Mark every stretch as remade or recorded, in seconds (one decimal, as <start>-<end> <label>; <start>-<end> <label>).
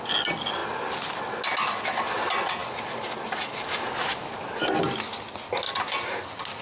0.0-6.6 recorded